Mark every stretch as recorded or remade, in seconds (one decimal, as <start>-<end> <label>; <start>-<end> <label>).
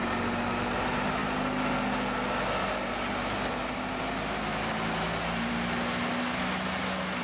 0.0-7.2 recorded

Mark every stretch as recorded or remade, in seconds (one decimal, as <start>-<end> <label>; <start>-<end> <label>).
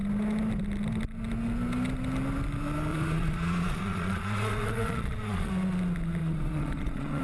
0.0-2.9 recorded; 2.9-5.5 remade; 5.5-6.2 recorded; 6.2-7.2 remade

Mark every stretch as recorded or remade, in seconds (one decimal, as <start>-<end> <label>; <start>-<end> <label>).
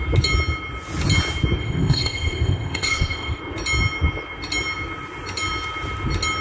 0.0-1.6 recorded; 1.6-3.4 remade; 3.4-6.4 recorded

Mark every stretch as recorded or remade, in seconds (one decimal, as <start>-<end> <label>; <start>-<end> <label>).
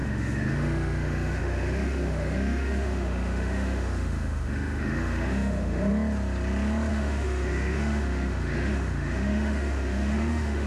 0.0-5.9 remade; 5.9-6.9 recorded; 6.9-10.7 remade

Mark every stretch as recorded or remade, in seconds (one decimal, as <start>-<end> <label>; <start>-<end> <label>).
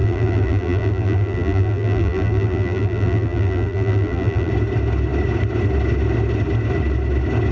0.0-4.5 remade; 4.5-7.5 recorded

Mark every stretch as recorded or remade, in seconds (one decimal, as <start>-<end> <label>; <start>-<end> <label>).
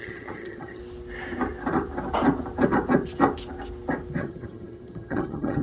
0.0-0.8 remade; 0.8-4.2 recorded; 4.2-5.6 remade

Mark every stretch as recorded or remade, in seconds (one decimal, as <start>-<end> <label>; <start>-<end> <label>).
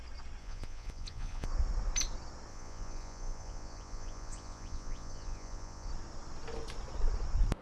0.0-0.4 recorded; 0.4-1.5 remade; 1.5-2.5 recorded; 2.5-5.9 remade; 5.9-7.6 recorded